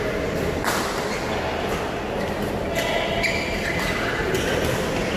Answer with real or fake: real